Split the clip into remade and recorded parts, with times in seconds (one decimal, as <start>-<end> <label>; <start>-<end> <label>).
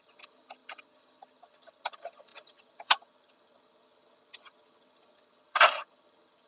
0.0-6.5 remade